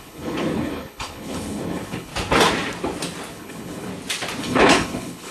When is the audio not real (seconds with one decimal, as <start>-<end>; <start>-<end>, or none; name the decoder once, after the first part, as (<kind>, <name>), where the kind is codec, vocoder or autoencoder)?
0.0-2.1 (codec, HILCodec); 3.3-3.9; 4.4-5.3